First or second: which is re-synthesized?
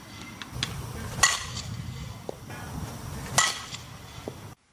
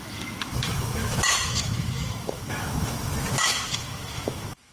second